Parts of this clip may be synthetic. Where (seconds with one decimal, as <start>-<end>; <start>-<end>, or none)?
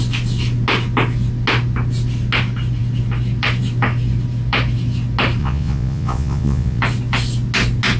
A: 5.4-6.8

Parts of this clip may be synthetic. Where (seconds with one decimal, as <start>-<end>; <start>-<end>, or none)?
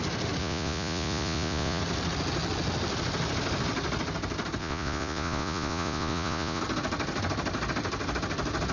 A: 0.4-1.8; 4.6-6.6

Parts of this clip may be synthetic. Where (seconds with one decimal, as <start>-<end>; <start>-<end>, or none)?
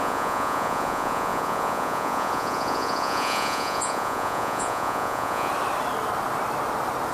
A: 0.0-5.5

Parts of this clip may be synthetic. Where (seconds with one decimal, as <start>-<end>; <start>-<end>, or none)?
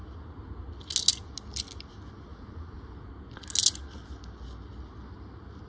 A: 0.0-0.7; 2.3-3.1